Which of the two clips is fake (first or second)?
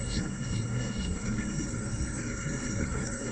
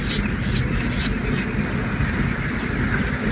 first